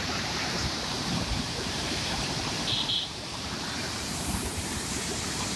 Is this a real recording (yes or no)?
no